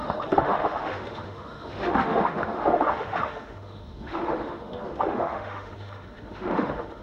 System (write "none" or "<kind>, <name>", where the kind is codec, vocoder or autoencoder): autoencoder, DAC-VAE